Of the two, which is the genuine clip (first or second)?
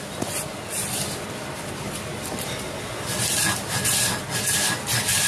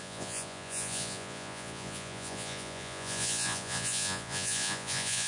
first